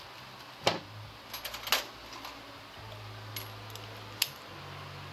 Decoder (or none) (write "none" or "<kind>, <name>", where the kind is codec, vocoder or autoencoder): none